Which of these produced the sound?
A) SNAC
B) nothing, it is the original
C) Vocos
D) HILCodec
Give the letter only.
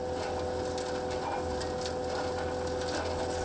B